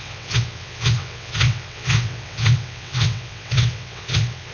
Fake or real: fake